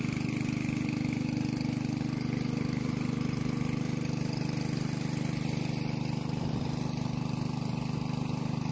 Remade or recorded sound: recorded